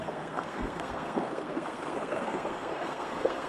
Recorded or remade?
remade